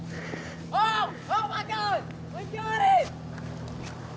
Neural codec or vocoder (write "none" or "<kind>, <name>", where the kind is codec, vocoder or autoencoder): none